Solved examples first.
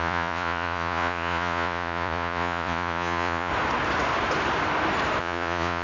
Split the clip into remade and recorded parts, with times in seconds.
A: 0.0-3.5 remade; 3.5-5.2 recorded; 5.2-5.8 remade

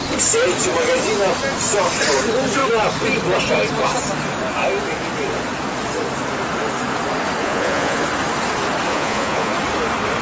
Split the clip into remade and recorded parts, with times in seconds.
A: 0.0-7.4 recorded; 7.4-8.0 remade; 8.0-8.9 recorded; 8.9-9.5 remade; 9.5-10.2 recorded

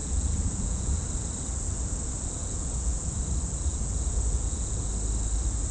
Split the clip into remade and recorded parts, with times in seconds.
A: 0.0-1.0 remade; 1.0-2.4 recorded; 2.4-3.1 remade; 3.1-3.7 recorded; 3.7-4.9 remade; 4.9-5.7 recorded